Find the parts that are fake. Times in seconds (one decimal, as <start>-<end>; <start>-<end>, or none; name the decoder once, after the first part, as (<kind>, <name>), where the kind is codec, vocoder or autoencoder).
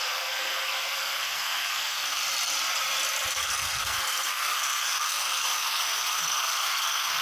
0.0-2.2 (codec, SNAC); 3.3-7.2